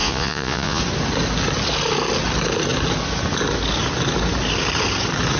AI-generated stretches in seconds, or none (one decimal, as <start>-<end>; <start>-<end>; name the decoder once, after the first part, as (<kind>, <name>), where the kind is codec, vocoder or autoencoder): 0.0-0.8 (vocoder, Vocos)